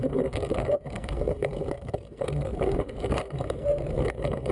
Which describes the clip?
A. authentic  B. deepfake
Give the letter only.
B